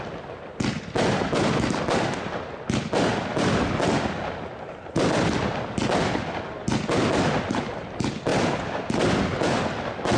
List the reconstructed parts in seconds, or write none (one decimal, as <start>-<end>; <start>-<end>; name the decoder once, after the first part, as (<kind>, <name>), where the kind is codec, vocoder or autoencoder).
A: none